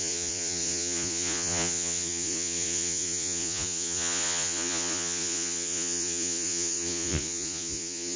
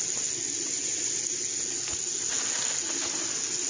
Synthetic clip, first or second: first